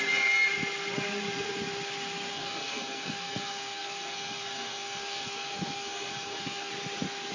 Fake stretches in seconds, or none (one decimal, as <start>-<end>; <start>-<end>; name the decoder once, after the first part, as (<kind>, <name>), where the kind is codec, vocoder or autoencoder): 2.3-6.7 (codec, SNAC)